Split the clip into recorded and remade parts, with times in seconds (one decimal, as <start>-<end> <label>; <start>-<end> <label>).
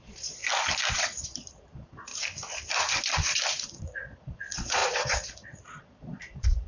0.0-0.4 remade; 0.4-0.9 recorded; 0.9-2.1 remade; 2.1-3.7 recorded; 3.7-6.7 remade